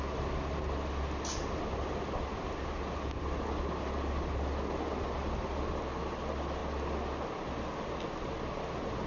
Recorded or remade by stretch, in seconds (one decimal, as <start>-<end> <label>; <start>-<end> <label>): 0.0-9.1 recorded